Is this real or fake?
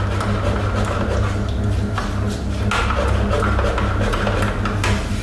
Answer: real